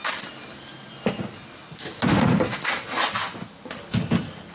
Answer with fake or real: real